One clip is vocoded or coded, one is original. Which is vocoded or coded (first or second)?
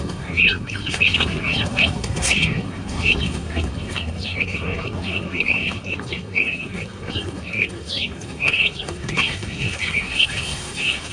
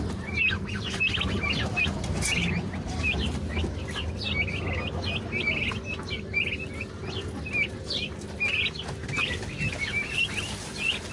first